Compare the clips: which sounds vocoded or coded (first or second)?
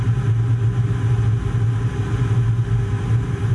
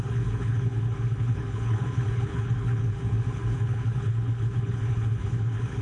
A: second